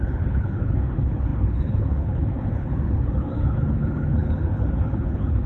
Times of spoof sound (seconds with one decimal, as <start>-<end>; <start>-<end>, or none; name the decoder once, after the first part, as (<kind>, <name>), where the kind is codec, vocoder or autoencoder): 0.0-5.5 (codec, HILCodec)